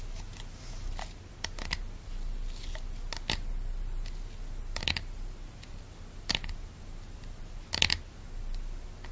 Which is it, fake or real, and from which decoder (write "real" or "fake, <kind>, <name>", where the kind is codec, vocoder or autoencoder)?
real